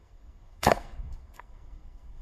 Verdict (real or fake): fake